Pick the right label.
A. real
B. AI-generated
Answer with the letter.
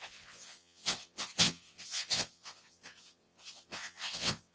B